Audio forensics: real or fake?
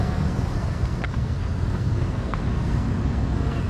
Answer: fake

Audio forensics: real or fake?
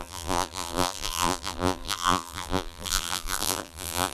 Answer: fake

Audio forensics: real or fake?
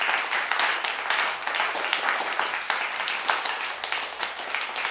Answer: real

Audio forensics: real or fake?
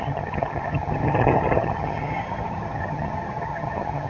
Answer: fake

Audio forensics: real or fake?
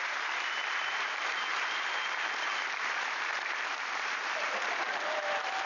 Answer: fake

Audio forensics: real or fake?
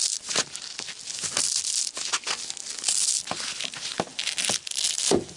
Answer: real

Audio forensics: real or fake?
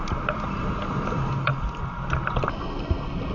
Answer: real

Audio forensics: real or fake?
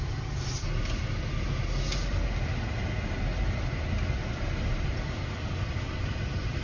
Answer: real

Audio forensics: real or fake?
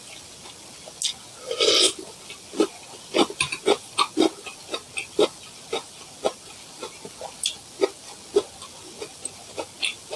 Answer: real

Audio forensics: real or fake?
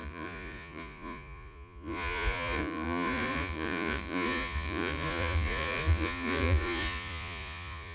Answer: fake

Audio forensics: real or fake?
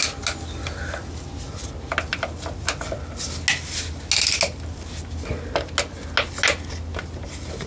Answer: real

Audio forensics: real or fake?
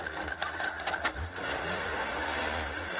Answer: fake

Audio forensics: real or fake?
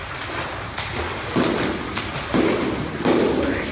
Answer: real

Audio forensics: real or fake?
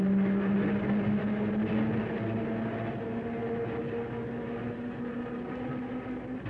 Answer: real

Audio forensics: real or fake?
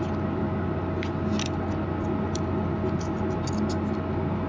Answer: real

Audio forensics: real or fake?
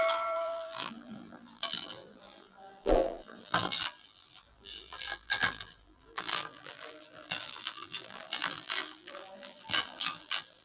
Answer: fake